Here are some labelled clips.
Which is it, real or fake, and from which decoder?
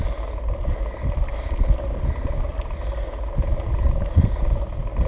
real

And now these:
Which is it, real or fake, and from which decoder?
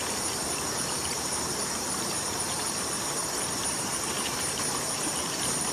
fake, vocoder, BigVGAN v2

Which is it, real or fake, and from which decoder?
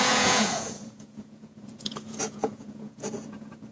fake, vocoder, Vocos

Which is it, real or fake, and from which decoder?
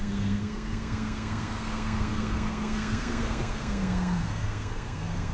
fake, codec, SNAC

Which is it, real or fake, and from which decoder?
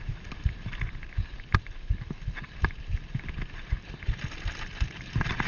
real